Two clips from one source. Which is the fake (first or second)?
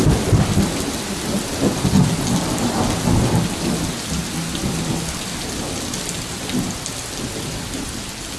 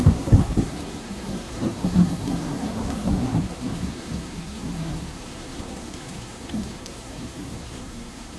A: second